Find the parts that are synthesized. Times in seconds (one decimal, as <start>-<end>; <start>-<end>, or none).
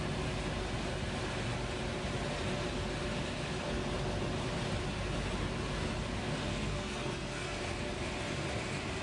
6.5-7.6